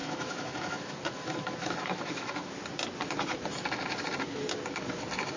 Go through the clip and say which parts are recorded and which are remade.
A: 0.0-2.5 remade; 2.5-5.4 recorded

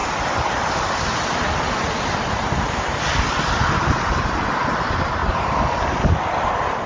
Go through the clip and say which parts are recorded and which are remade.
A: 0.0-6.9 recorded

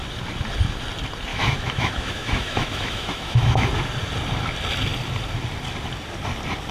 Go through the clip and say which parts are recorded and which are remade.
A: 0.0-1.3 recorded; 1.3-3.7 remade; 3.7-6.7 recorded

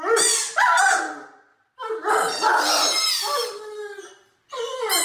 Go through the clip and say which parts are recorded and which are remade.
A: 0.0-1.5 recorded; 1.5-4.5 remade; 4.5-5.0 recorded